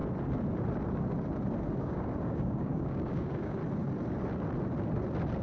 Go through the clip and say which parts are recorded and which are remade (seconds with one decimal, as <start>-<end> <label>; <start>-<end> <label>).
0.0-1.8 recorded; 1.8-3.6 remade; 3.6-5.4 recorded